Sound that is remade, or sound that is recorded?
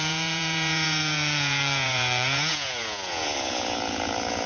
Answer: remade